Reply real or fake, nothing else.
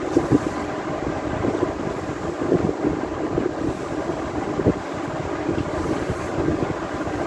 real